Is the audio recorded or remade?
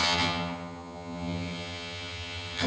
remade